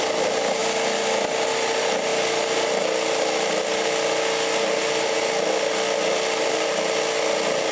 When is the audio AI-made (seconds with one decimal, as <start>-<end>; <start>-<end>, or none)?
none